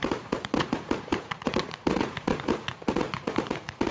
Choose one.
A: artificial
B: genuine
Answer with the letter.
A